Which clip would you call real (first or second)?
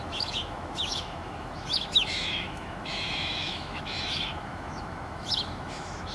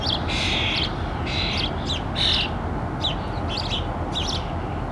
second